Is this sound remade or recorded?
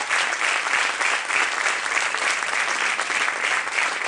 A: recorded